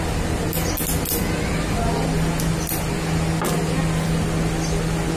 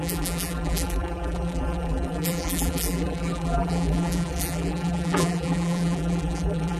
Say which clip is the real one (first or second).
first